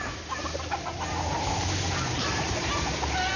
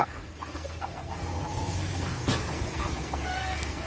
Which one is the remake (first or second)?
second